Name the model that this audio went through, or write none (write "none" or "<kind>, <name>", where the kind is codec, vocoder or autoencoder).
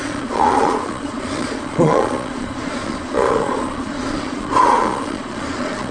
vocoder, Vocos